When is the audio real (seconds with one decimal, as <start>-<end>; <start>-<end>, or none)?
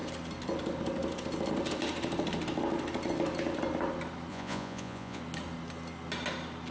0.0-4.3; 5.2-6.7